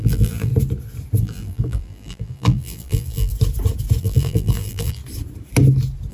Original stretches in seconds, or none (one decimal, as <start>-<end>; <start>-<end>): 0.5-1.2; 3.3-4.0; 5.0-6.1